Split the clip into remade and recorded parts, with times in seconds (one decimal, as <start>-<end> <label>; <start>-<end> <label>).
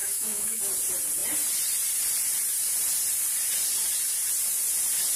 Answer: 0.0-0.6 remade; 0.6-5.2 recorded